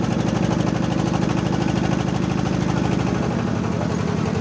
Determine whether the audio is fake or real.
real